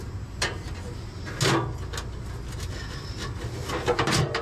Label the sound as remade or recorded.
recorded